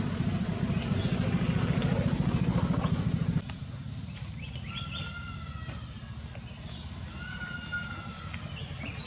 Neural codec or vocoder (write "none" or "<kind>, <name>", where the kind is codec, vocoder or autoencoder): none